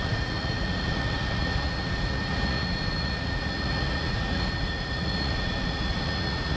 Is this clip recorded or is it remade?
remade